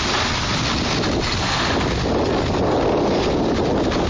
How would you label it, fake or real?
real